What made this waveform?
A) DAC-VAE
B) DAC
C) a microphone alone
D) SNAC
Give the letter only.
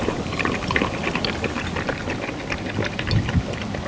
C